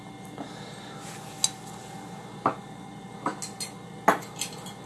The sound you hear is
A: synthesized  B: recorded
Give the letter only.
B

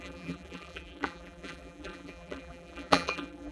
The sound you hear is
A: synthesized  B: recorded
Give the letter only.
A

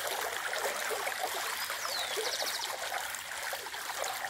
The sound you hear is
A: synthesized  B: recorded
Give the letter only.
A